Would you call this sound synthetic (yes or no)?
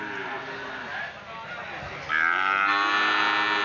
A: no